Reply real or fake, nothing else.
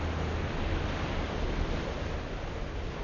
real